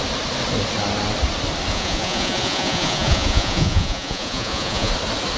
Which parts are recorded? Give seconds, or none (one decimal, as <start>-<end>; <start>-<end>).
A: 0.0-1.7; 4.9-5.4

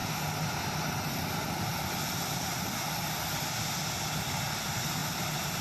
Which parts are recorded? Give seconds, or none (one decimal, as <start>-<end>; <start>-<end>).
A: 0.0-5.6